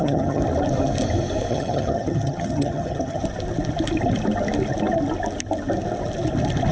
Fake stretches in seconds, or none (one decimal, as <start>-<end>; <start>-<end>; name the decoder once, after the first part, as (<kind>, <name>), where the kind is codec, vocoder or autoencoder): 0.0-0.4 (vocoder, HiFi-GAN); 1.5-3.2